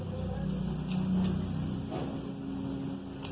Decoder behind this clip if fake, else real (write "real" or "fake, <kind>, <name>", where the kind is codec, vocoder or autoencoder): real